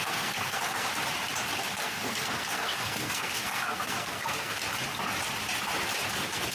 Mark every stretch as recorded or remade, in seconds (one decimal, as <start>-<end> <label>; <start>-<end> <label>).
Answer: 0.0-0.9 remade; 0.9-1.6 recorded; 1.6-4.6 remade; 4.6-6.1 recorded; 6.1-6.5 remade